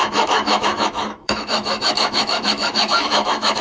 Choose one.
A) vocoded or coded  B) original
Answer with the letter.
A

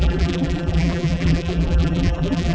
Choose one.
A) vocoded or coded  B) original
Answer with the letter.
A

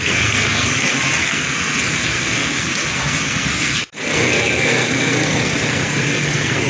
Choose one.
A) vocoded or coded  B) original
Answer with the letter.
A